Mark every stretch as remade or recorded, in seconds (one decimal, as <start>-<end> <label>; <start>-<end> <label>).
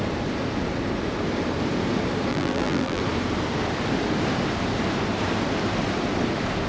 0.0-2.3 recorded; 2.3-3.0 remade; 3.0-6.7 recorded